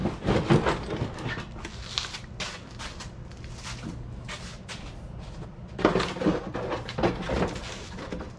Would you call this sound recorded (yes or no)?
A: yes